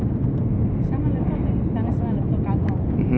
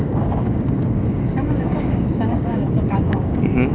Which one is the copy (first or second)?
second